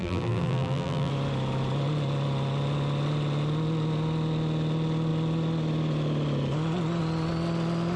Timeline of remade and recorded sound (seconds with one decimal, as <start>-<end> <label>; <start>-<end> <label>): 0.0-1.1 remade; 1.1-8.0 recorded